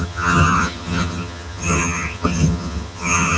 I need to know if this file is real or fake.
fake